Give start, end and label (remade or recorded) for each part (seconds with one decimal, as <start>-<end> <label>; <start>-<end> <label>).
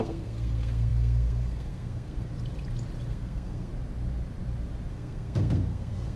0.0-2.3 remade; 2.3-3.1 recorded; 3.1-3.7 remade; 3.7-4.9 recorded; 4.9-6.2 remade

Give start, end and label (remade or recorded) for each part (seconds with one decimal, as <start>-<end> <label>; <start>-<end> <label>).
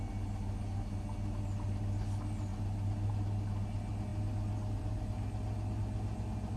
0.0-6.6 recorded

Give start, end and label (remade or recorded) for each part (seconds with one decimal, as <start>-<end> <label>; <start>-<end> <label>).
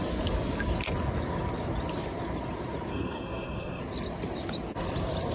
0.0-2.9 recorded; 2.9-3.8 remade; 3.8-5.3 recorded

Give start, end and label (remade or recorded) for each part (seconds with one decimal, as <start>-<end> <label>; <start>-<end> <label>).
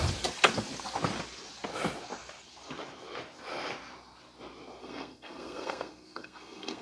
0.0-4.8 recorded; 4.8-6.8 remade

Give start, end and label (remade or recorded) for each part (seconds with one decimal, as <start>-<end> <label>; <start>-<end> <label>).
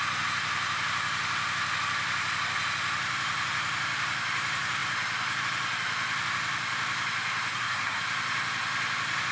0.0-7.5 recorded; 7.5-8.0 remade; 8.0-9.3 recorded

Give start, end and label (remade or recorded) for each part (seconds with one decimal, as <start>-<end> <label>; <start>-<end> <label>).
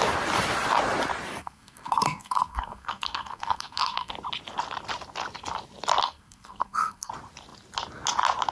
0.0-1.4 recorded; 1.4-4.1 remade; 4.1-6.0 recorded; 6.0-7.1 remade; 7.1-8.5 recorded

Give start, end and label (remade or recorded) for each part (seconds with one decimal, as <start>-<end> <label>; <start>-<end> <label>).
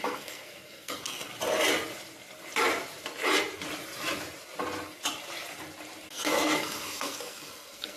0.0-1.3 remade; 1.3-6.1 recorded; 6.1-8.0 remade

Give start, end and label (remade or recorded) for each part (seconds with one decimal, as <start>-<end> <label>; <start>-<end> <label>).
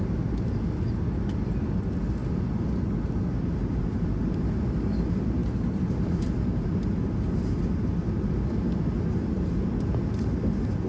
0.0-10.9 recorded